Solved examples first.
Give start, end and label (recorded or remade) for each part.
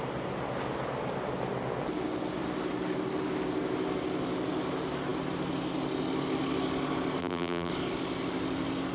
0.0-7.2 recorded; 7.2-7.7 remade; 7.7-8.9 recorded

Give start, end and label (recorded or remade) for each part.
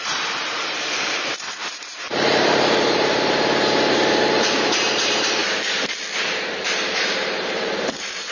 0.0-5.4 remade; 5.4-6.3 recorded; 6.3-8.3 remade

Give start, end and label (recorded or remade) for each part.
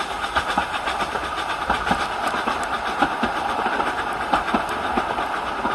0.0-0.6 recorded; 0.6-4.0 remade; 4.0-5.7 recorded